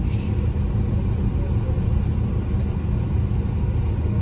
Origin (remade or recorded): recorded